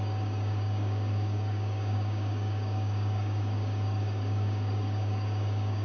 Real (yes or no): no